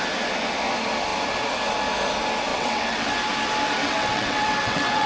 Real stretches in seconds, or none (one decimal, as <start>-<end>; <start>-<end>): 0.0-2.5; 3.1-3.8

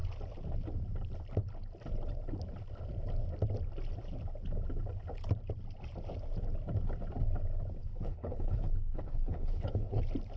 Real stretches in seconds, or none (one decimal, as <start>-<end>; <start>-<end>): 0.0-7.8; 10.0-10.4

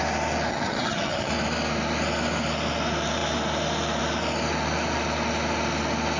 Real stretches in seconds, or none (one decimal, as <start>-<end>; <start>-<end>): 0.0-0.5; 1.3-6.2

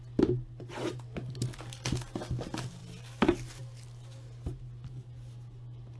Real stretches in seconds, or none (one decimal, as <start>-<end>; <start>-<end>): 0.0-6.0

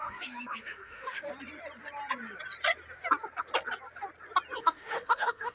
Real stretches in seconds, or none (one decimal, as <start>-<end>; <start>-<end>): 1.3-4.6

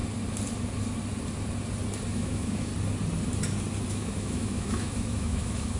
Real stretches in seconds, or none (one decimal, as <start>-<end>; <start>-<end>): 0.0-2.1; 2.7-3.9